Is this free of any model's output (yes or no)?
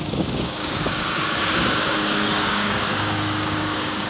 no